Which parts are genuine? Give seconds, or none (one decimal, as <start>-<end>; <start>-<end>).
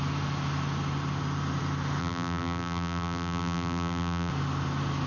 0.0-2.0; 4.3-5.1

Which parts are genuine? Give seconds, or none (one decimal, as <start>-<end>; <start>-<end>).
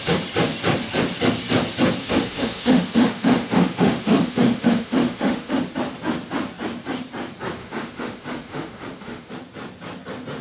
0.0-2.0; 5.6-7.6; 9.3-10.4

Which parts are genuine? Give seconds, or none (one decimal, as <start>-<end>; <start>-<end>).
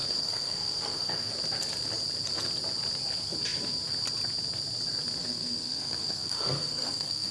1.3-5.2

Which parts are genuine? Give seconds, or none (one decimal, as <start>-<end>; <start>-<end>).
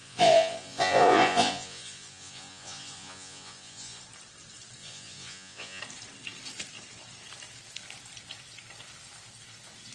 4.0-4.8; 5.8-9.9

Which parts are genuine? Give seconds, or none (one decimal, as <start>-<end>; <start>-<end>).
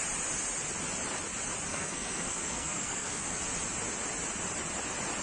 0.0-1.7; 3.4-5.2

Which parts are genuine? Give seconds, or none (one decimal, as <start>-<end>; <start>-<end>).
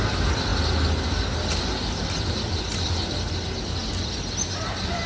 0.0-5.1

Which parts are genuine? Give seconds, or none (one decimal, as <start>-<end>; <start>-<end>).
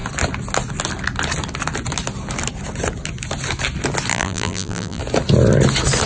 0.0-4.1; 5.0-6.1